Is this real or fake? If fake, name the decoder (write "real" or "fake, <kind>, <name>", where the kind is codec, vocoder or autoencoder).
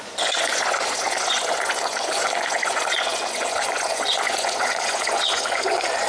fake, vocoder, Vocos